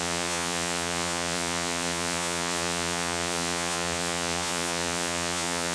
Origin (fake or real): fake